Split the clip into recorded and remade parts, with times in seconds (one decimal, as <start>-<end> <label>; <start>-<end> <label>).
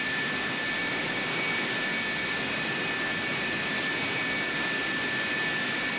0.0-6.0 recorded